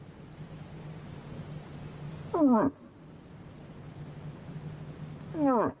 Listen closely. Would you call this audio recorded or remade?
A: recorded